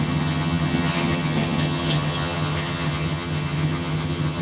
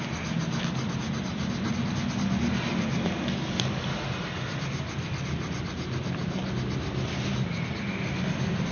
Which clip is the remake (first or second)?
first